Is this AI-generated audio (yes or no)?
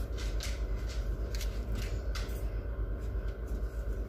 no